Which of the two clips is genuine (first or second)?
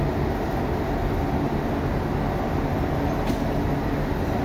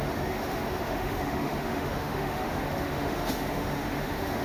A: first